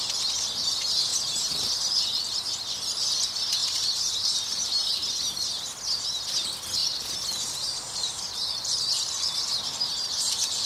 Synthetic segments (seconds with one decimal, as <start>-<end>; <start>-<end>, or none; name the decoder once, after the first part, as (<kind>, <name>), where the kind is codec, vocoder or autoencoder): 3.6-5.5 (vocoder, BigVGAN v2); 6.8-9.9